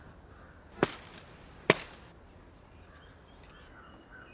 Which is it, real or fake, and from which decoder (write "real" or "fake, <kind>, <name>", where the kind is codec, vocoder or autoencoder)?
real